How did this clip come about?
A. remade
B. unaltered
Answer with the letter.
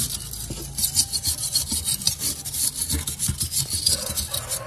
B